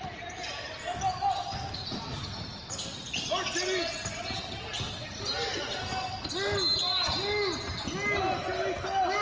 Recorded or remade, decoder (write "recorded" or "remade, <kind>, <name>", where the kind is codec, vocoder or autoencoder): recorded